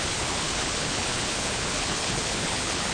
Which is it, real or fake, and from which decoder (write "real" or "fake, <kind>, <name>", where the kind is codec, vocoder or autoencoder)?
fake, codec, HILCodec